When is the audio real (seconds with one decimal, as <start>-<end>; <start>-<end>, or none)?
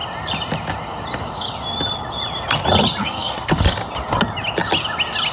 0.0-3.0; 3.6-5.3